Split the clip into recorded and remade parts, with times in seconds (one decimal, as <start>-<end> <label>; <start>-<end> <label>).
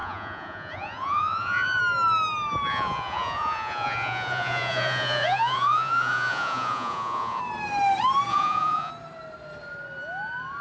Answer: 0.0-1.8 remade; 1.8-2.7 recorded; 2.7-7.4 remade; 7.4-8.3 recorded; 8.3-8.9 remade; 8.9-10.6 recorded